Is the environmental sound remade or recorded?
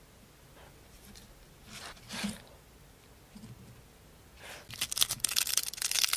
recorded